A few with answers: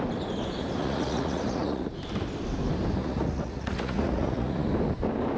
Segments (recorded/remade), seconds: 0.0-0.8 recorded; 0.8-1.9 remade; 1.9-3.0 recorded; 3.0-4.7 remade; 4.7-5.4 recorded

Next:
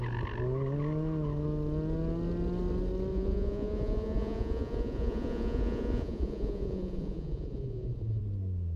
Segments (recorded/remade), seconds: 0.0-3.1 recorded; 3.1-8.2 remade; 8.2-8.8 recorded

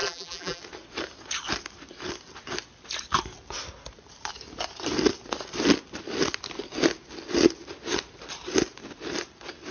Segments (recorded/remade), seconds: 0.0-0.6 remade; 0.6-9.7 recorded